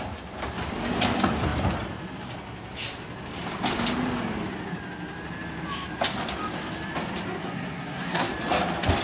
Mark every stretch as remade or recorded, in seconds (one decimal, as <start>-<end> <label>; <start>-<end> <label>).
0.0-7.4 recorded; 7.4-8.3 remade; 8.3-9.0 recorded